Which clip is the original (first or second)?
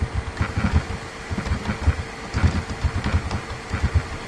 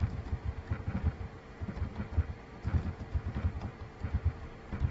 first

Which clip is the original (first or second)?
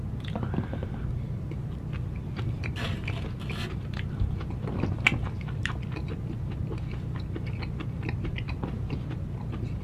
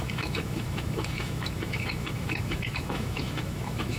first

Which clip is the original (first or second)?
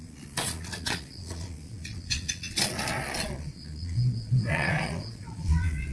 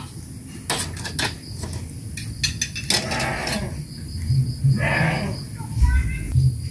second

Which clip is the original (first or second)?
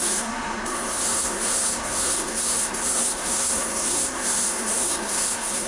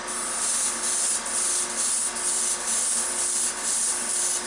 second